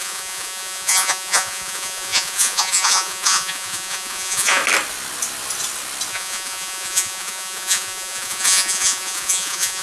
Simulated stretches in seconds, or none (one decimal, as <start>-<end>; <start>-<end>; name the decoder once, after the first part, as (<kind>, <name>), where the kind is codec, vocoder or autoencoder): 0.0-4.6 (vocoder, Vocos); 6.1-9.8